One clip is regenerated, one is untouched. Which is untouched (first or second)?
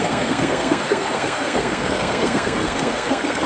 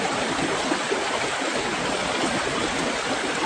second